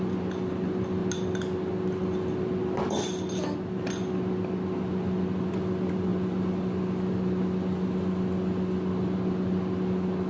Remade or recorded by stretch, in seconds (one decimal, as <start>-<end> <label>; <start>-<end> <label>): 0.0-10.3 recorded